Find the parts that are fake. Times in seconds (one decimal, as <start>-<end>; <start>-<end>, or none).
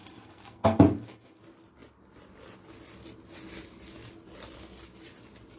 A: 0.0-1.4